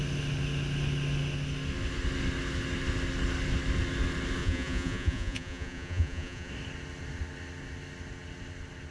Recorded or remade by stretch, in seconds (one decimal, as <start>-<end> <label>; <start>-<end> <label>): 0.0-4.4 recorded; 4.4-6.5 remade; 6.5-8.9 recorded